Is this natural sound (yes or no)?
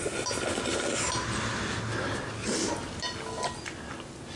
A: yes